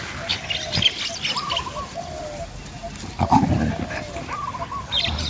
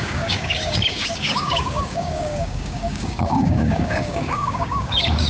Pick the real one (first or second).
first